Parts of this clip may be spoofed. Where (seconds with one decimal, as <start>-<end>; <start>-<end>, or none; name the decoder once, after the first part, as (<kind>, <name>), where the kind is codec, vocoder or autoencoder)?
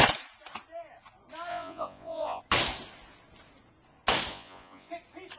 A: 1.5-2.4 (vocoder, Vocos); 4.3-4.9